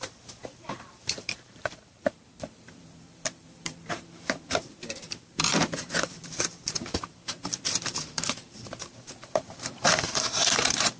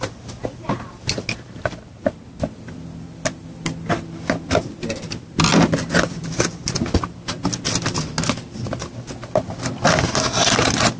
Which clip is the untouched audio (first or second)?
second